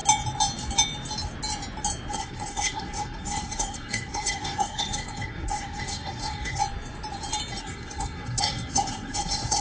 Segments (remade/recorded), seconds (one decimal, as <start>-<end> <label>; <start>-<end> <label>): 0.0-2.1 recorded; 2.1-6.6 remade; 6.6-7.6 recorded; 7.6-9.6 remade